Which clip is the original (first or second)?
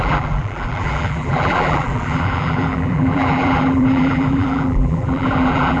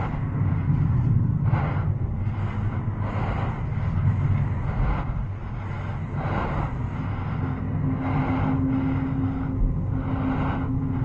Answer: second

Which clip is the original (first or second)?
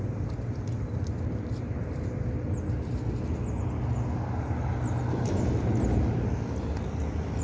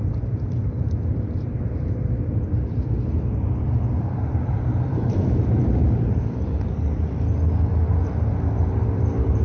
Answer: first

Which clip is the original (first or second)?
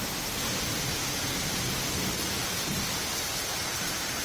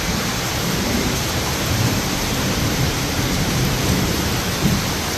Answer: first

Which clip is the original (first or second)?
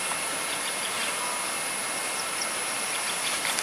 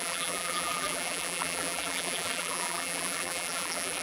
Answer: first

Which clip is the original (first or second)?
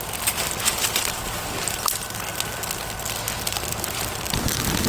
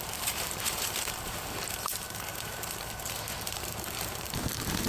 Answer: first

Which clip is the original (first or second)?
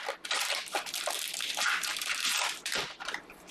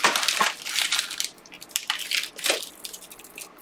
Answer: first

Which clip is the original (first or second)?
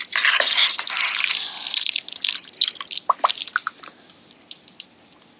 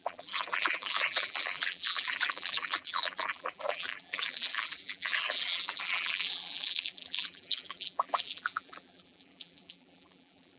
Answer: first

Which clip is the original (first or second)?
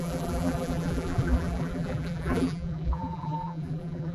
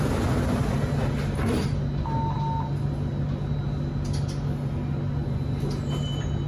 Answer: second